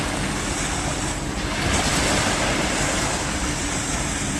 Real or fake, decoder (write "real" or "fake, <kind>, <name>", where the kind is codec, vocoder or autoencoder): real